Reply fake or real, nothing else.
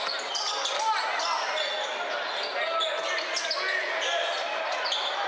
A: real